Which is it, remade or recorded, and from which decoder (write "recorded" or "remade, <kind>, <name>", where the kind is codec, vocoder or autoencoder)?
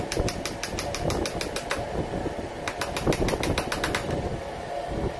recorded